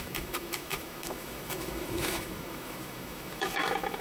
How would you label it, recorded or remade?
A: remade